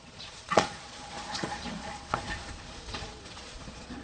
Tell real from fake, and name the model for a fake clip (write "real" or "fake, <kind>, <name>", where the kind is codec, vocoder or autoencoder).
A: fake, vocoder, Vocos